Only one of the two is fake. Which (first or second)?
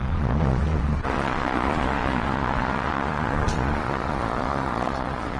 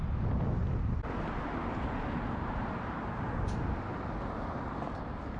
first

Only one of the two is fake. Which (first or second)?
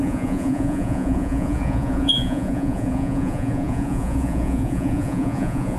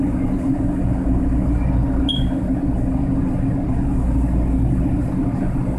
first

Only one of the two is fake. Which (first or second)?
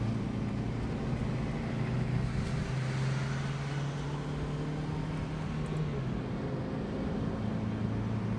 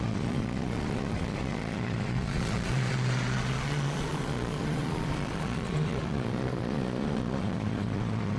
second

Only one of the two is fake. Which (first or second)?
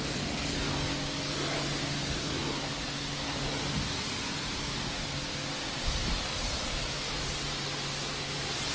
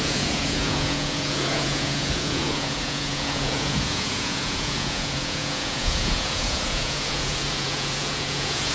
second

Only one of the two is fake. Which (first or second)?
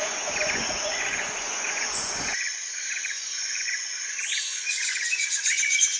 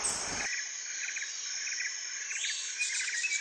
first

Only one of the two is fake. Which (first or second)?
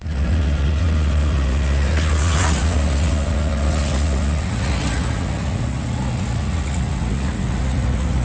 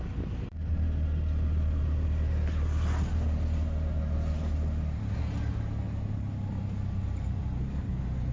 first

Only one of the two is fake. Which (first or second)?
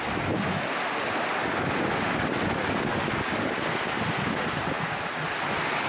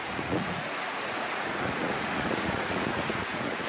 second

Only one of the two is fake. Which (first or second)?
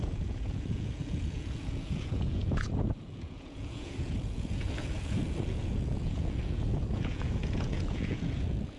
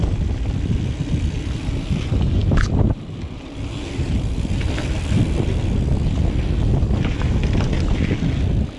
first